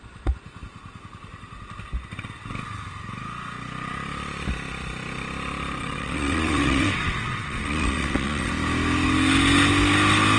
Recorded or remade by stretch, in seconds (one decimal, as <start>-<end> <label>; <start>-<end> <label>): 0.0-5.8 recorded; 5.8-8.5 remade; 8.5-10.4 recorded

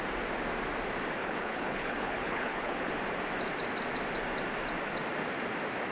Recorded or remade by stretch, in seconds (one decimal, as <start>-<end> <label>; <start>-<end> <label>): 0.0-1.2 recorded; 1.2-2.9 remade; 2.9-5.9 recorded

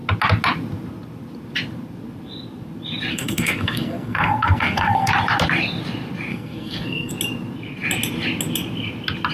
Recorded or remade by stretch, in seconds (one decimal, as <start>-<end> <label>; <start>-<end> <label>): 0.0-3.1 recorded; 3.1-5.1 remade; 5.1-6.3 recorded; 6.3-7.1 remade; 7.1-9.3 recorded

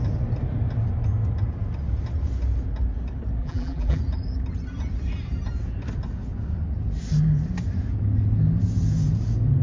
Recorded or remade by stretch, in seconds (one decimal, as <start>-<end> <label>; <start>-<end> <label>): 0.0-3.4 recorded; 3.4-4.0 remade; 4.0-9.6 recorded

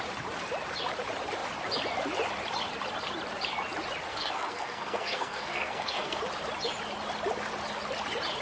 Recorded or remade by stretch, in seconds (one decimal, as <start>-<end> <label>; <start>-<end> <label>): 0.0-4.1 recorded; 4.1-6.2 remade; 6.2-8.4 recorded

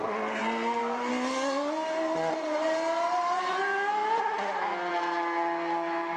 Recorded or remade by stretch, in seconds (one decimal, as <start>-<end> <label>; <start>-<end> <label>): 0.0-0.4 recorded; 0.4-1.1 remade; 1.1-2.4 recorded; 2.4-3.6 remade; 3.6-6.2 recorded